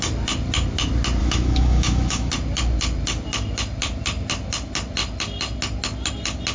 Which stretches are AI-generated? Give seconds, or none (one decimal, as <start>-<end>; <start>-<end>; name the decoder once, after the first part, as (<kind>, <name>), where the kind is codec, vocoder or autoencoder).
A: 1.2-2.3 (autoencoder, DAC-VAE)